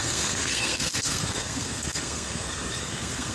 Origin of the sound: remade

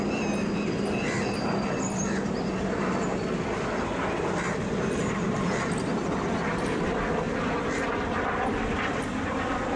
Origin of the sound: recorded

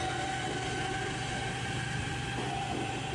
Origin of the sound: remade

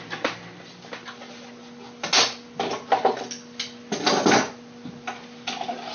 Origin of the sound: recorded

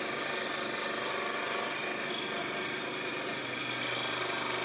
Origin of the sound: recorded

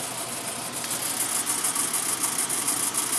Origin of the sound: recorded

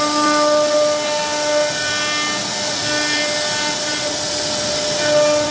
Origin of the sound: recorded